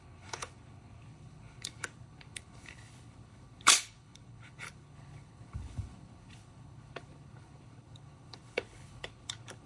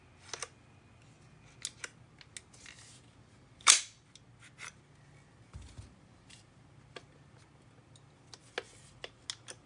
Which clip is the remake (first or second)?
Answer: first